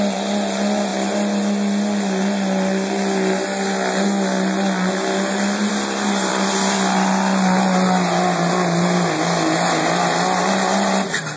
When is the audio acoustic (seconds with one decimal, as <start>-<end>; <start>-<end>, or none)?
0.0-11.4